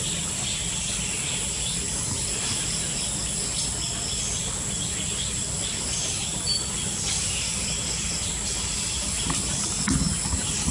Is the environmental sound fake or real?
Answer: real